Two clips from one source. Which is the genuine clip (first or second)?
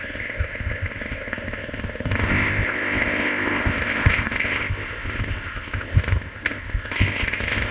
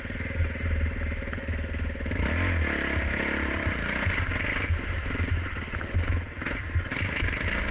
second